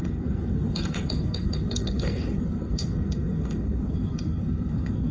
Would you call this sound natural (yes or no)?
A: no